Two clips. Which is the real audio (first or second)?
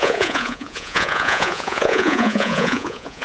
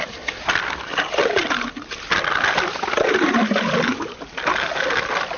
second